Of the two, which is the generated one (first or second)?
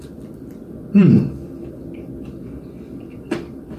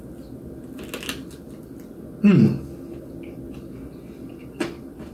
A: first